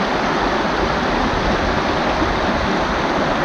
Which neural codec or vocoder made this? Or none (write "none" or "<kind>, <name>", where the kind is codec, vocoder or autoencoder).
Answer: none